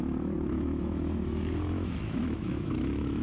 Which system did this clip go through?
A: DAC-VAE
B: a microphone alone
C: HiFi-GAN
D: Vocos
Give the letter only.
A